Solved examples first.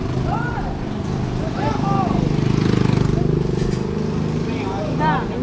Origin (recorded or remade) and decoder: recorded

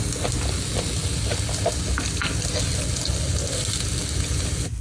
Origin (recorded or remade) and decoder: recorded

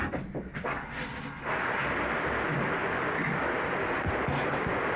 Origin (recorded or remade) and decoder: recorded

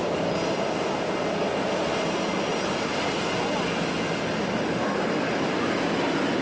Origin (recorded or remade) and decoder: recorded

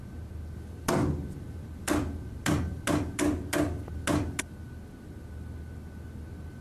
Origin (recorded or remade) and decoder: recorded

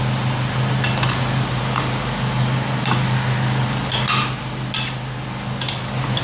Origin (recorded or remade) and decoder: recorded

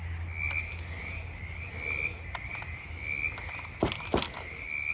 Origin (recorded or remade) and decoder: recorded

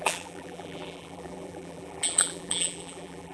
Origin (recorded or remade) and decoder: remade, vocoder, BigVGAN v2